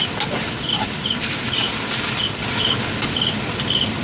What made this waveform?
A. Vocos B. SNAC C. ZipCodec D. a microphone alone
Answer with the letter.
D